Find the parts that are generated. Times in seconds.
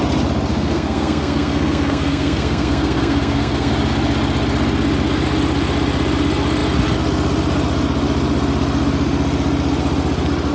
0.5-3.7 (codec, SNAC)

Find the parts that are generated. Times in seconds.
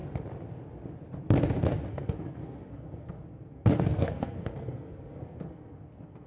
1.9-6.3 (codec, SNAC)